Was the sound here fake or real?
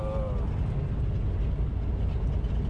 real